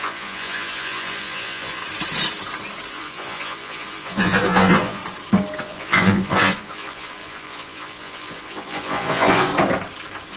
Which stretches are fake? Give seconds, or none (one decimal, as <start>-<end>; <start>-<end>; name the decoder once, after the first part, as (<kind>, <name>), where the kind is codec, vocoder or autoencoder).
0.0-1.8 (vocoder, Vocos); 2.9-5.0; 5.6-9.5